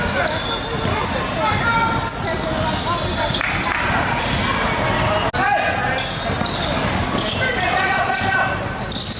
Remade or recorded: recorded